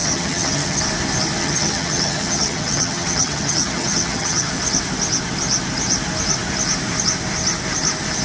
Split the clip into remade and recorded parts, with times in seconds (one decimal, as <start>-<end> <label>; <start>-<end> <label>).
0.0-0.8 remade; 0.8-1.4 recorded; 1.4-4.5 remade; 4.5-8.2 recorded